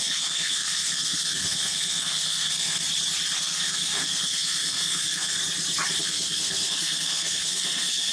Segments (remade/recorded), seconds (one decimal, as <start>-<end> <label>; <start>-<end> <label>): 0.0-2.8 remade; 2.8-3.4 recorded; 3.4-5.4 remade; 5.4-6.0 recorded; 6.0-8.1 remade

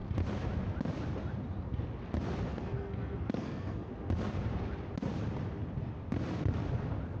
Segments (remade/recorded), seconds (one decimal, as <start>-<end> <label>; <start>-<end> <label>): 0.0-2.5 recorded; 2.5-3.9 remade; 3.9-7.2 recorded

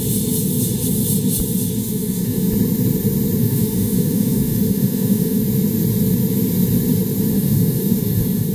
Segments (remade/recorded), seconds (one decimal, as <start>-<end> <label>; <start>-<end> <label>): 0.0-1.8 recorded; 1.8-2.5 remade; 2.5-3.4 recorded; 3.4-5.4 remade; 5.4-7.3 recorded; 7.3-8.5 remade

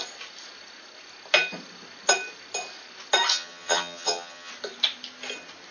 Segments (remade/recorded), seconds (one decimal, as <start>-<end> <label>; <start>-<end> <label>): 0.0-3.3 recorded; 3.3-4.5 remade; 4.5-5.7 recorded

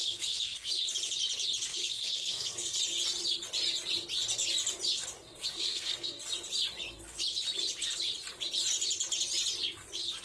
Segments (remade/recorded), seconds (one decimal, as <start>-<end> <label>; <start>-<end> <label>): 0.0-0.7 remade; 0.7-1.7 recorded; 1.7-2.8 remade; 2.8-5.4 recorded; 5.4-6.2 remade; 6.2-10.2 recorded

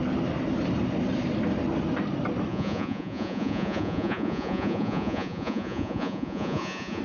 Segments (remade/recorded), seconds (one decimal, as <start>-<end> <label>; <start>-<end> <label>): 0.0-2.5 recorded; 2.5-7.0 remade

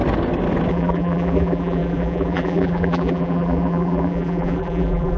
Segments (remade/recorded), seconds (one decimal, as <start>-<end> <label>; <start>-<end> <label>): 0.0-0.7 recorded; 0.7-5.2 remade

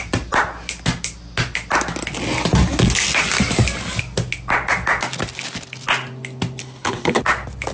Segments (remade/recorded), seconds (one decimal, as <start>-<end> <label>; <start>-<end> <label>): 0.0-6.6 recorded; 6.6-7.2 remade; 7.2-7.7 recorded